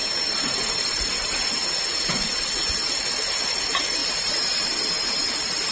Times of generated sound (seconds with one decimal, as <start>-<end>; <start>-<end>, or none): none